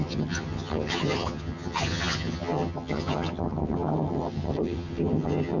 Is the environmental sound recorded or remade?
remade